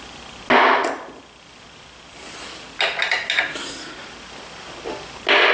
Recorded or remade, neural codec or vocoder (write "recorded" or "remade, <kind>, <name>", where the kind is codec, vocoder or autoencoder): recorded